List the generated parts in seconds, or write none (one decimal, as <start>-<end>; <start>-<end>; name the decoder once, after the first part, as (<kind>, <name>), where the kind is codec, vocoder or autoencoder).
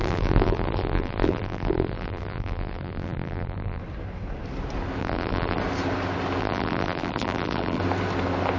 0.0-3.8 (vocoder, BigVGAN v2); 5.0-5.6; 6.4-7.8